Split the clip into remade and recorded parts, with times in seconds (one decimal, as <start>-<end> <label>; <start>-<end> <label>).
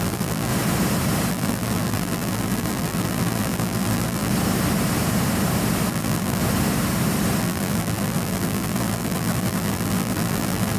0.0-0.5 remade; 0.5-1.3 recorded; 1.3-4.3 remade; 4.3-5.9 recorded; 5.9-6.4 remade; 6.4-7.4 recorded; 7.4-10.8 remade